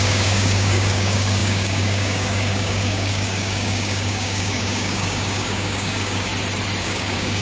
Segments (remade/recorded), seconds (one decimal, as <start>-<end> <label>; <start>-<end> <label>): 0.0-6.3 remade; 6.3-6.8 recorded; 6.8-7.4 remade